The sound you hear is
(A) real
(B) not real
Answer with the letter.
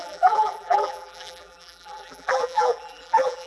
B